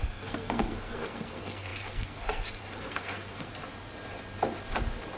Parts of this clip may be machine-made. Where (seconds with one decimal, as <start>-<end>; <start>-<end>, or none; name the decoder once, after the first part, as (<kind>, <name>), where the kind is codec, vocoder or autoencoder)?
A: 0.0-3.5 (codec, SNAC)